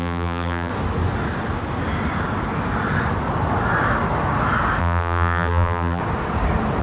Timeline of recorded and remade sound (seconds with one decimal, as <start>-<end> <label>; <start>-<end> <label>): 0.0-0.7 remade; 0.7-4.8 recorded; 4.8-6.0 remade; 6.0-6.8 recorded